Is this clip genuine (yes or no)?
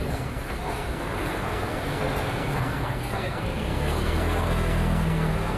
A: no